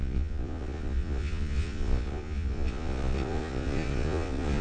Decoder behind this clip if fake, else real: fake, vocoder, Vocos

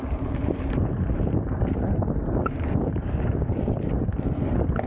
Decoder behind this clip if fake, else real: fake, vocoder, BigVGAN v2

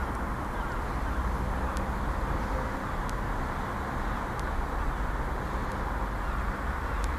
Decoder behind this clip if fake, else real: real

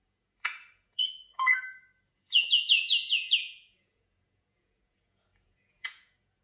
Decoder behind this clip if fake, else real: fake, vocoder, Vocos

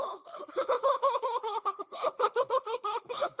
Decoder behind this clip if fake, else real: fake, codec, HILCodec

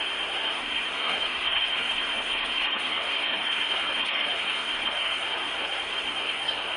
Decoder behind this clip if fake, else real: fake, codec, SNAC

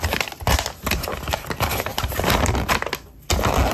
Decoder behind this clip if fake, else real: real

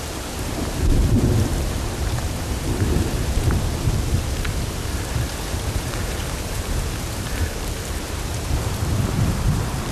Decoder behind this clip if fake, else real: fake, vocoder, BigVGAN v2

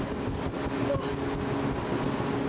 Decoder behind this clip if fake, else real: real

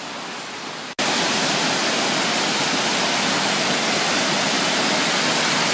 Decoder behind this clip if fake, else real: real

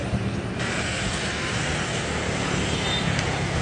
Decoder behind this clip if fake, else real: real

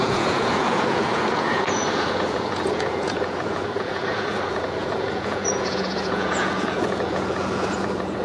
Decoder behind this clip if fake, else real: fake, vocoder, Vocos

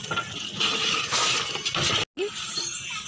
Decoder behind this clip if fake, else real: real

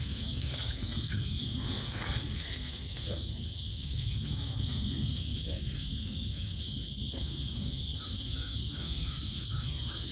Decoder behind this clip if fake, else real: fake, codec, SNAC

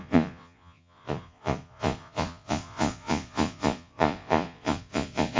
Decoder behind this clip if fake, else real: fake, vocoder, Vocos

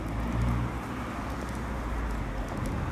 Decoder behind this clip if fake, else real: real